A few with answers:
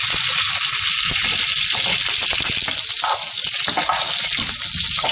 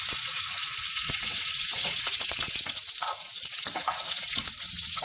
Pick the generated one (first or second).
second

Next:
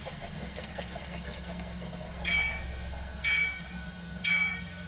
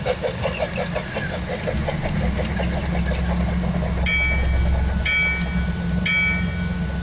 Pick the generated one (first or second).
first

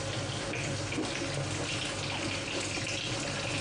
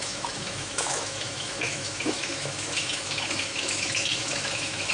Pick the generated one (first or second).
second